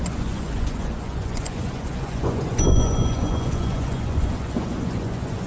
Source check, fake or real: fake